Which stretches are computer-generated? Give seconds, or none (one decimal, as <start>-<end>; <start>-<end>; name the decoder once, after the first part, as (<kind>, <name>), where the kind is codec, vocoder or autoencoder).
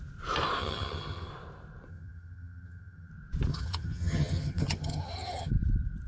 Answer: 0.6-1.3 (vocoder, HiFi-GAN); 1.9-3.1; 3.5-5.5